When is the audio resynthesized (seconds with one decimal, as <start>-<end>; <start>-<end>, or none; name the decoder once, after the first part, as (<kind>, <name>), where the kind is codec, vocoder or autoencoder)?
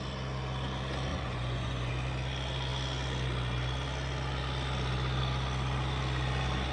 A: 1.1-1.9 (vocoder, Vocos)